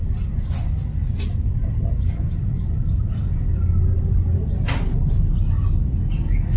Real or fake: real